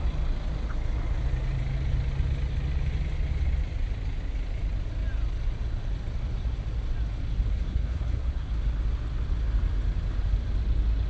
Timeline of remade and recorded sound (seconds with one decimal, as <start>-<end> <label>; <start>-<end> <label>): 0.0-7.5 recorded; 7.5-8.5 remade; 8.5-11.1 recorded